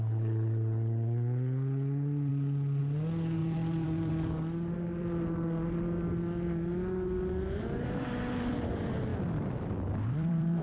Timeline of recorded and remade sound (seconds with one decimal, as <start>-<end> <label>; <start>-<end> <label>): 0.0-3.4 recorded; 3.4-4.1 remade; 4.1-9.1 recorded; 9.1-10.6 remade